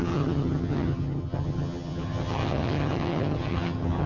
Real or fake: fake